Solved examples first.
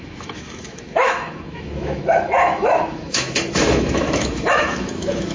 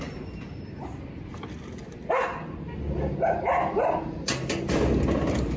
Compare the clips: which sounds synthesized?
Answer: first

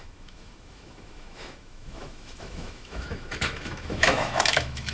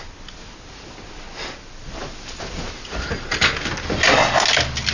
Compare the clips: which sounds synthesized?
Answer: first